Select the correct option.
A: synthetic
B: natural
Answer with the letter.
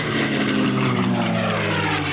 A